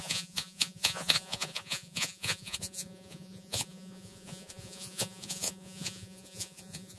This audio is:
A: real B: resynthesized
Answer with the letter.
B